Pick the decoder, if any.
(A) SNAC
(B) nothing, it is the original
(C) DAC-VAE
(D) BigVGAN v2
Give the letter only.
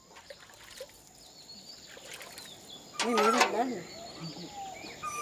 B